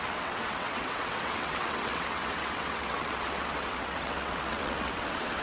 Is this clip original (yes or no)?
no